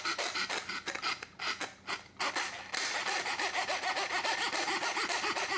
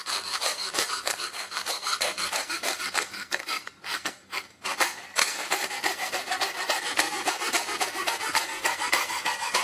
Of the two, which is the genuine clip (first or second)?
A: first